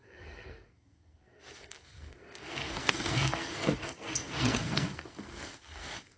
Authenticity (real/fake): fake